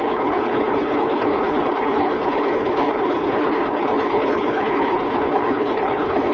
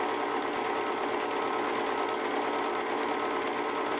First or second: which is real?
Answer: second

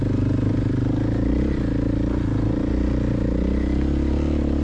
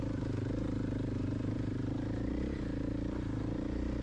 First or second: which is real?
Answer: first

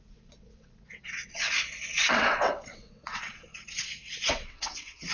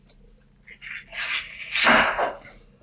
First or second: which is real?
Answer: second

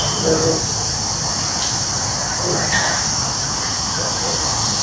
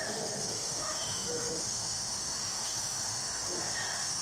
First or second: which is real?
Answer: first